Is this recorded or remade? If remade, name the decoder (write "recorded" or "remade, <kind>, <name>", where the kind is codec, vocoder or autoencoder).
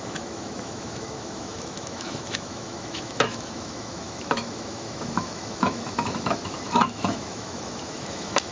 remade, autoencoder, DAC-VAE